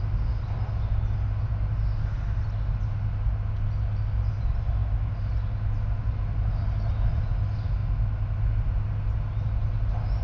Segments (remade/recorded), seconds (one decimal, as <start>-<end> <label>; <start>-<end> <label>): 0.0-10.2 recorded